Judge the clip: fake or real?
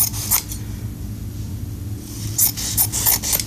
real